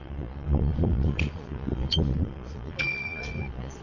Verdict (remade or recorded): remade